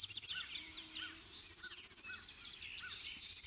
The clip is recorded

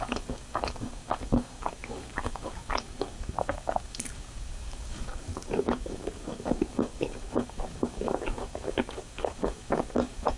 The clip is remade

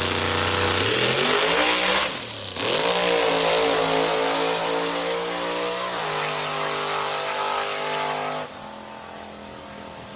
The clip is recorded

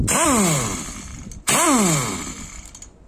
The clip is recorded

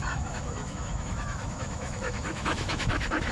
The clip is remade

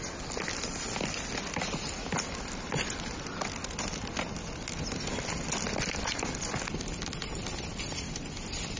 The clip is recorded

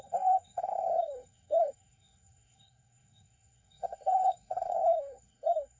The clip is remade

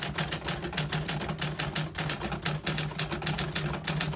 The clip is recorded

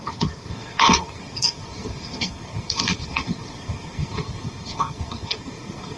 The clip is remade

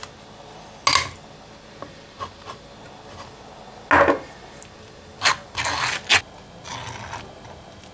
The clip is recorded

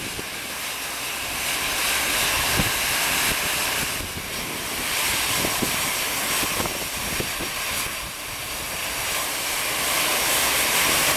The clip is remade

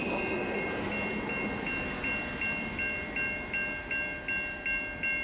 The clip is recorded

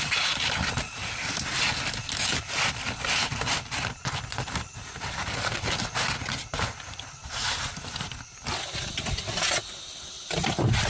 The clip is recorded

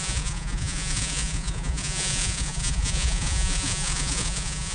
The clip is remade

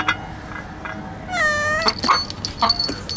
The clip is recorded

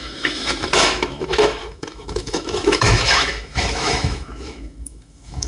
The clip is remade